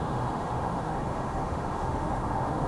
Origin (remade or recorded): remade